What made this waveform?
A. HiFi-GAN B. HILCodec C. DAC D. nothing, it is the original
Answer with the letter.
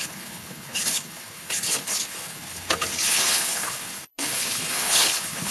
B